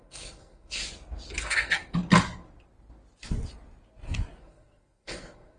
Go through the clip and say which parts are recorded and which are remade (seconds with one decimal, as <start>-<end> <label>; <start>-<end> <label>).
0.0-0.8 remade; 0.8-1.4 recorded; 1.4-1.8 remade; 1.8-4.4 recorded; 4.4-5.6 remade